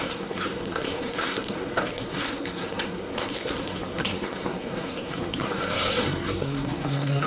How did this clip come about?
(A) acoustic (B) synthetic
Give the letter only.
B